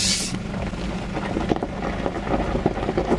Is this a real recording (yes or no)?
yes